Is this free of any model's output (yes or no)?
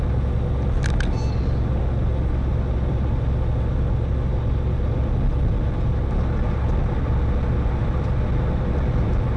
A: yes